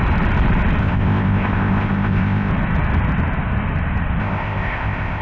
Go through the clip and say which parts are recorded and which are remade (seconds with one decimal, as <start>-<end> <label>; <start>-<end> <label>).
0.0-0.8 recorded; 0.8-2.5 remade; 2.5-4.2 recorded; 4.2-5.2 remade